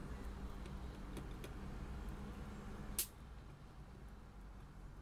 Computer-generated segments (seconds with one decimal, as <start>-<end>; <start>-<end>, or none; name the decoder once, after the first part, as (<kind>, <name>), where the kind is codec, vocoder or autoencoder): none